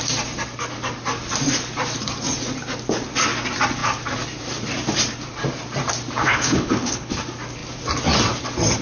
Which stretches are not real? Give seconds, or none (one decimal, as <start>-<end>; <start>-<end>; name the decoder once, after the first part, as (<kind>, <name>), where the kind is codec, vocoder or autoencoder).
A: 6.2-7.1 (codec, HILCodec)